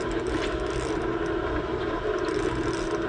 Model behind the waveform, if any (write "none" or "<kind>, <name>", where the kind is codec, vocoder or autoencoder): none